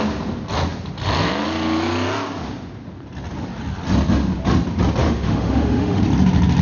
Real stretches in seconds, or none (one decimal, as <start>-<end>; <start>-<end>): 0.0-5.0; 6.0-6.6